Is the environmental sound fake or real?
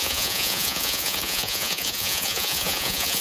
fake